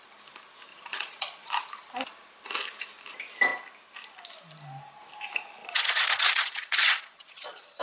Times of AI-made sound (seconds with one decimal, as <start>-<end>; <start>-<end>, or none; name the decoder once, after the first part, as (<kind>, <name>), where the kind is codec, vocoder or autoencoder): 0.7-1.5 (vocoder, Vocos); 5.6-7.8